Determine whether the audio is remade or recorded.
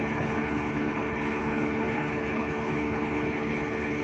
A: remade